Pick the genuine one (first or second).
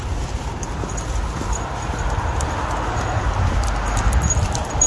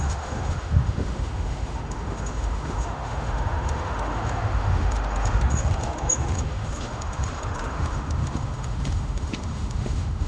first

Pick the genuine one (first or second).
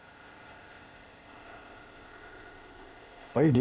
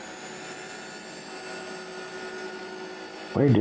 second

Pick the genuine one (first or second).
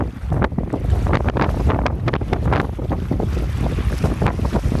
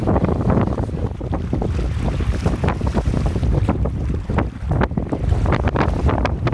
first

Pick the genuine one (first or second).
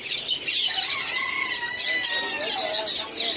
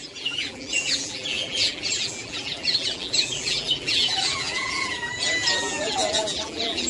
first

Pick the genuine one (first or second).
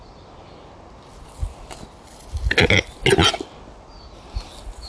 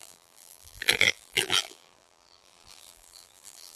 first